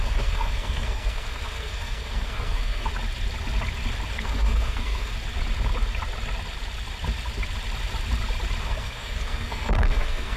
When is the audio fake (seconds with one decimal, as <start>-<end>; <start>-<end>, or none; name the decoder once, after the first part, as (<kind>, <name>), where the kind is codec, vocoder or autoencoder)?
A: 0.0-2.9 (codec, SNAC); 4.1-5.1; 8.6-10.4